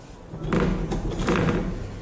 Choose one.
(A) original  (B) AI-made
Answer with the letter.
A